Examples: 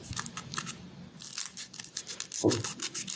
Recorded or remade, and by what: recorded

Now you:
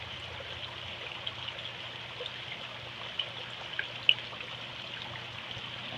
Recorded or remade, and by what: recorded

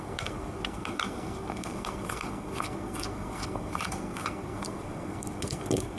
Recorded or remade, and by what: remade, codec, SNAC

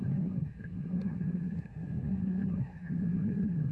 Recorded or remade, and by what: remade, codec, SNAC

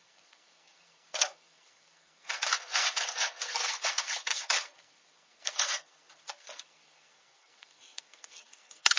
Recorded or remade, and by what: remade, codec, SNAC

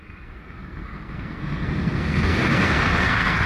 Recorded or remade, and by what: remade, codec, SNAC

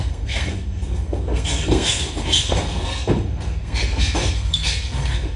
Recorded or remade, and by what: remade, codec, SNAC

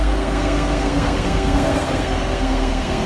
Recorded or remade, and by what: remade, codec, SNAC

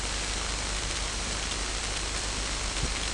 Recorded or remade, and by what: recorded